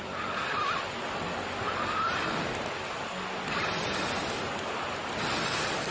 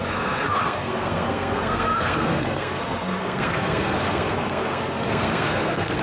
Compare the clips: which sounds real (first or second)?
first